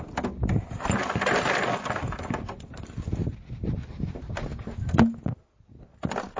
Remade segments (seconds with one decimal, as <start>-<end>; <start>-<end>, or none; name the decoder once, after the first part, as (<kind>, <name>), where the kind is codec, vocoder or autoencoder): none